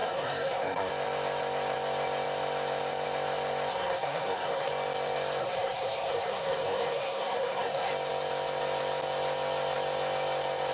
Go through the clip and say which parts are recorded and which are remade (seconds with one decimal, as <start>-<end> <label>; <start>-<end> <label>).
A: 0.0-0.9 remade; 0.9-3.7 recorded; 3.7-4.7 remade; 4.7-5.4 recorded; 5.4-7.9 remade; 7.9-10.7 recorded